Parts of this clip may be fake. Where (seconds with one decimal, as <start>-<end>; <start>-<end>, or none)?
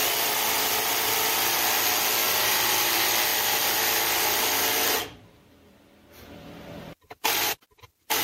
0.0-1.6; 2.2-2.9; 3.3-8.2